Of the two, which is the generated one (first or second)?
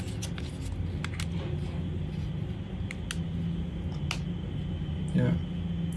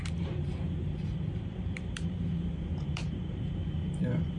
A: second